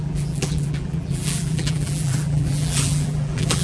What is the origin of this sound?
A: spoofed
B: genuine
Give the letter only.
A